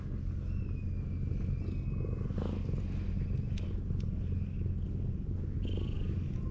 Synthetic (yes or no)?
no